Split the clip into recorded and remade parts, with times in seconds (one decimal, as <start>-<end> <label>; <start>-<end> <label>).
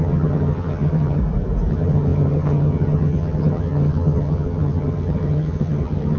0.0-1.2 remade; 1.2-1.7 recorded; 1.7-6.2 remade